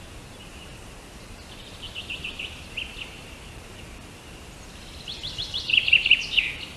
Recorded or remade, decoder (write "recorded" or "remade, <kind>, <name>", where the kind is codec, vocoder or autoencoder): recorded